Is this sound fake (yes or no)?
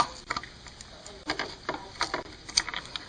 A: no